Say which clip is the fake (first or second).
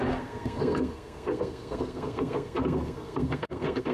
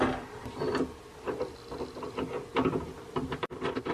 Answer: first